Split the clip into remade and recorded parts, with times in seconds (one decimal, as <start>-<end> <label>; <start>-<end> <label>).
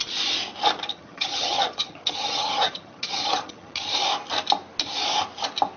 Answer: 0.0-0.9 recorded; 0.9-3.8 remade; 3.8-5.8 recorded